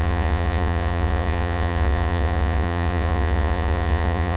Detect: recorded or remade remade